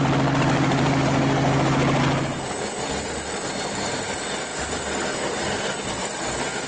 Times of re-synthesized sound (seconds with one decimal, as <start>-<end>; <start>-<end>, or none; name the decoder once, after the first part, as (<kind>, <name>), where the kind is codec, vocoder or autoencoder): none